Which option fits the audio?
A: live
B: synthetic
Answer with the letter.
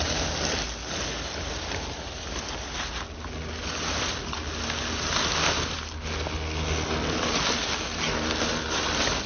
A